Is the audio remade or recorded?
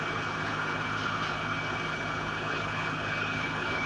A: remade